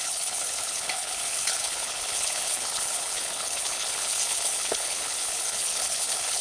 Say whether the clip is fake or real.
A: fake